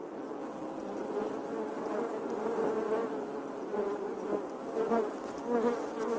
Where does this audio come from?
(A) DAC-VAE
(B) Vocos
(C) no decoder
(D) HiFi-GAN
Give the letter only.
C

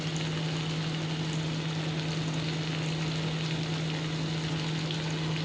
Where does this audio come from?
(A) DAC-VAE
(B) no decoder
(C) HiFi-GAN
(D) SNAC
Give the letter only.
B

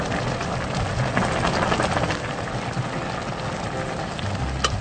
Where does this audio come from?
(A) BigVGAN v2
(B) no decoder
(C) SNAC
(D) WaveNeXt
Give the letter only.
B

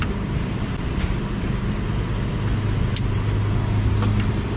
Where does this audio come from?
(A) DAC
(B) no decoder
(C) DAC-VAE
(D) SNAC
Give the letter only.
B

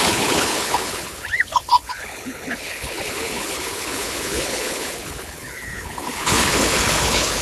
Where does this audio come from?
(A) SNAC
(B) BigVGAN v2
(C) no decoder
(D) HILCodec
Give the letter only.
D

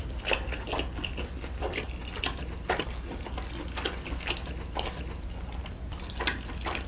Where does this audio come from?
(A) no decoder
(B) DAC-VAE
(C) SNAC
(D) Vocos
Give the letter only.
A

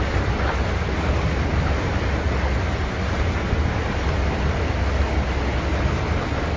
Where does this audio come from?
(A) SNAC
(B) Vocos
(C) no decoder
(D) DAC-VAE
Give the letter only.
C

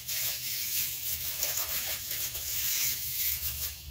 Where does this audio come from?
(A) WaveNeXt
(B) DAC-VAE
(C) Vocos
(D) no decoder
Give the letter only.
B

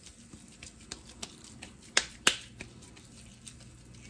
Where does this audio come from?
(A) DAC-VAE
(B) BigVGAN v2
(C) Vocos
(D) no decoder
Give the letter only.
D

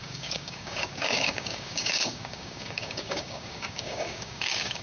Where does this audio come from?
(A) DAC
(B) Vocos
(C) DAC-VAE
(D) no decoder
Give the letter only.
A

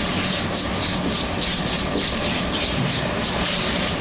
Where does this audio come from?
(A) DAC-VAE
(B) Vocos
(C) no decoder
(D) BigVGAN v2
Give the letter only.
D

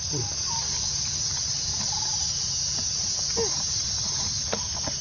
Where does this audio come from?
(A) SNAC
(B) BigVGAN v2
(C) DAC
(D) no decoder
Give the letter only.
D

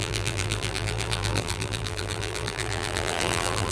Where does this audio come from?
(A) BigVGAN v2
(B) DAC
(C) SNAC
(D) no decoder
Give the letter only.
A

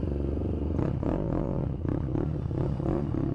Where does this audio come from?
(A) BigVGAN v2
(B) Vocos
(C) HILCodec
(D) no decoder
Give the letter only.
B